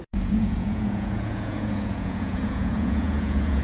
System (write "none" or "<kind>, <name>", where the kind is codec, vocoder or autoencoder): vocoder, Vocos